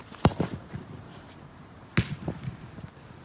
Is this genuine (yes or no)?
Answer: yes